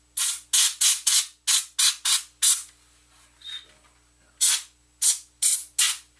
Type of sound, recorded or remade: recorded